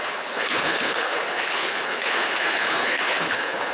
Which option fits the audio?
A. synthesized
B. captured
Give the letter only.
A